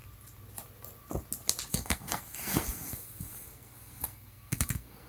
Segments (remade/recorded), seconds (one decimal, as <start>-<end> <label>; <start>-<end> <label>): 0.0-1.7 recorded; 1.7-5.1 remade